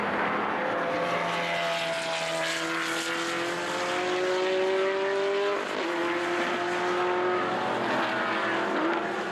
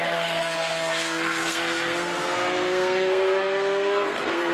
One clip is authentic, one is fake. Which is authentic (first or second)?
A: first